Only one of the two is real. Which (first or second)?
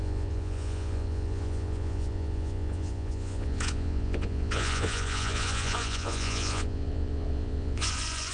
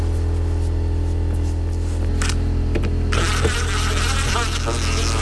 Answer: second